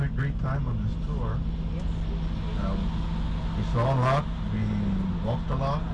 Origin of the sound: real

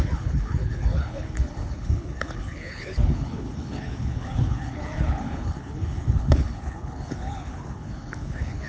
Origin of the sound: fake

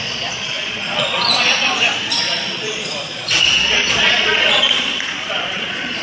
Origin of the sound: fake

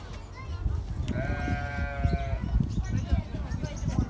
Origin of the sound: real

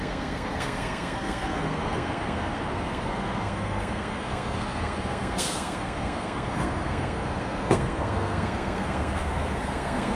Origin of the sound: fake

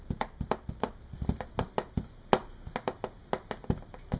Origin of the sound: real